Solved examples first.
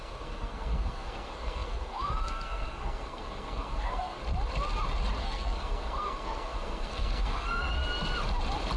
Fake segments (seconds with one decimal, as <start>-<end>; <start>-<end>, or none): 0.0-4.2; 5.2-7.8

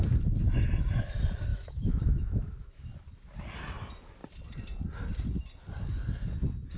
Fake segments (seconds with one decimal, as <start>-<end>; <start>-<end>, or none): 1.5-2.8

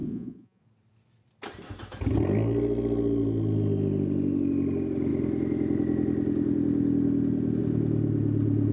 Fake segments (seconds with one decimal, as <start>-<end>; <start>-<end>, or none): 0.0-0.6

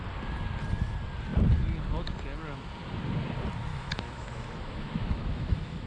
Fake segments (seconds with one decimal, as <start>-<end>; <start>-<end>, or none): 3.7-5.9

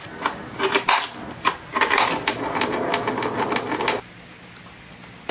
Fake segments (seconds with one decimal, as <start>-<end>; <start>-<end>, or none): none

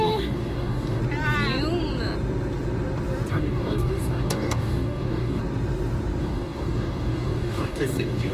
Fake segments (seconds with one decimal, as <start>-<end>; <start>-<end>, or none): 0.0-1.0; 3.3-5.4; 6.2-8.3

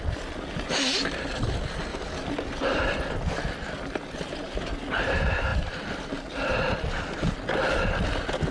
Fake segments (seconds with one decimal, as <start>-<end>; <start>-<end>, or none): 1.9-2.8; 5.5-7.3